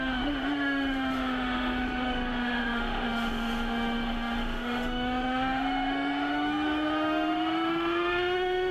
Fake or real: fake